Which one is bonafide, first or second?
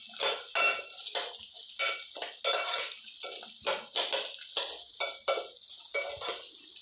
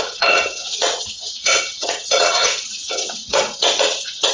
first